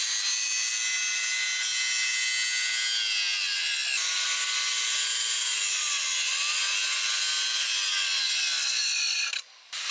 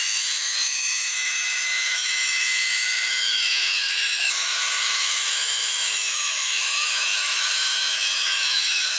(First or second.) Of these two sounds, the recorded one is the first